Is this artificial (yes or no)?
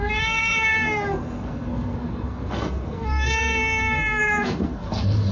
yes